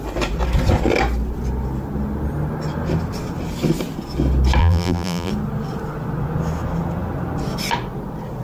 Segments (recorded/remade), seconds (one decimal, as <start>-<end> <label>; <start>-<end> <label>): 0.0-4.6 recorded; 4.6-5.3 remade; 5.3-8.4 recorded

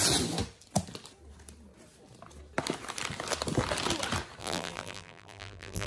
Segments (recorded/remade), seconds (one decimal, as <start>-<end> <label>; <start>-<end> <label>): 0.0-4.4 recorded; 4.4-5.9 remade

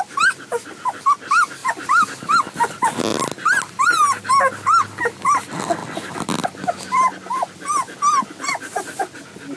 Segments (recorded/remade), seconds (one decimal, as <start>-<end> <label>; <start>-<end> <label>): 0.0-9.6 recorded

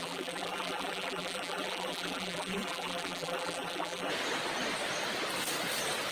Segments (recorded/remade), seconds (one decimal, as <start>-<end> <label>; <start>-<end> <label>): 0.0-4.1 remade; 4.1-6.1 recorded